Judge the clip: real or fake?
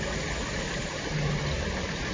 real